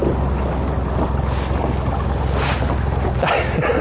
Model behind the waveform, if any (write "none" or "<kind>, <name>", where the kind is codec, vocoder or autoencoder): none